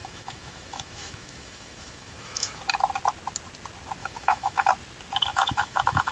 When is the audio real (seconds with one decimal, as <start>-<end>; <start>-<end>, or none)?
2.6-4.0; 4.7-5.3